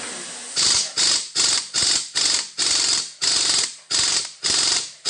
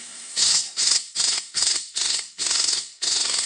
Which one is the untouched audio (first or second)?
first